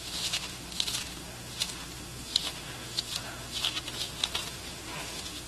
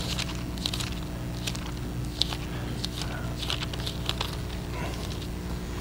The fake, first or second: first